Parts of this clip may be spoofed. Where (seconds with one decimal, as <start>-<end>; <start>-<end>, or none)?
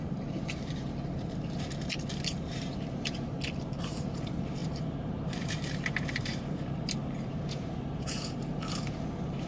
0.0-9.5